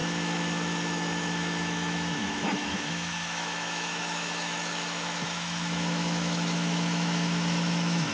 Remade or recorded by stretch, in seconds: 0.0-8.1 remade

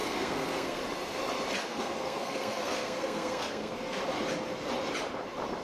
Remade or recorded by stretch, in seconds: 0.0-0.8 remade; 0.8-1.7 recorded; 1.7-4.0 remade; 4.0-5.6 recorded